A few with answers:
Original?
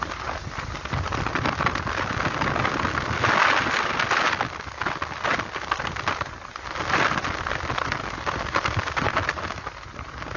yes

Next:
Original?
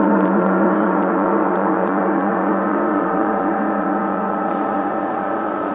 no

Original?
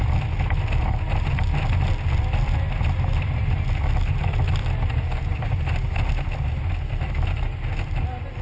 yes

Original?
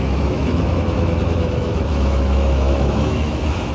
no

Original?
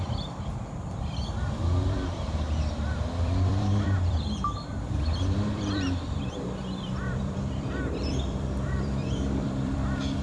no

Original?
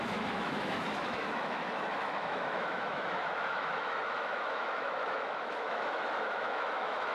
no